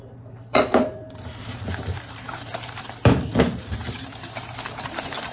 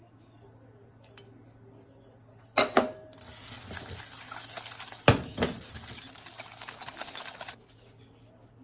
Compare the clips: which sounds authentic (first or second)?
second